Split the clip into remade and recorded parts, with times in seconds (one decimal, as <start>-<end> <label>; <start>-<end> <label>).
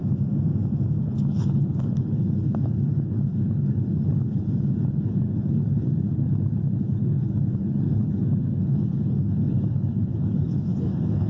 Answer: 0.0-1.0 recorded; 1.0-11.3 remade